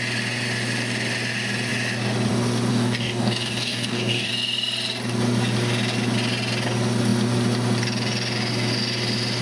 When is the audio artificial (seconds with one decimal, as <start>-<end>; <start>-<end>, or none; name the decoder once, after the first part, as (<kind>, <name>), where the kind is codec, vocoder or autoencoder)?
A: 2.7-4.3 (codec, DAC)